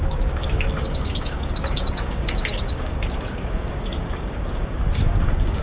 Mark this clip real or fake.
fake